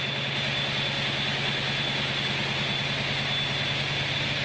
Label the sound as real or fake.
real